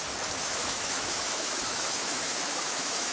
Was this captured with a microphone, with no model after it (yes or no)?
no